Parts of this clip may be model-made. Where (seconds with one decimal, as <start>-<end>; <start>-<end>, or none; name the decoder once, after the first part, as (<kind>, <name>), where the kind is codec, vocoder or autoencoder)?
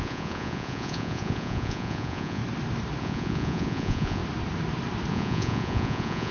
0.0-2.4 (vocoder, Vocos); 3.0-4.2; 5.1-6.3